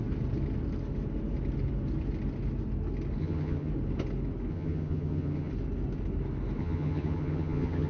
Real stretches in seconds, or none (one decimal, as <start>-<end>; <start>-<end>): 0.0-3.2; 3.7-4.5; 5.5-6.6